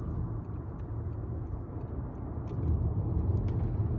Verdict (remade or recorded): recorded